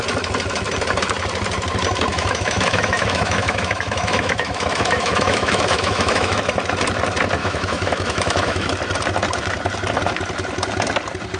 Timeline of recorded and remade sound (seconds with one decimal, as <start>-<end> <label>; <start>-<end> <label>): 0.0-2.1 recorded; 2.1-6.4 remade; 6.4-7.4 recorded; 7.4-8.7 remade; 8.7-11.4 recorded